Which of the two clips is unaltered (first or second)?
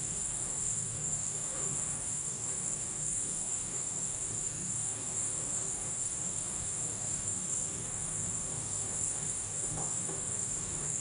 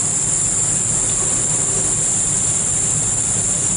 second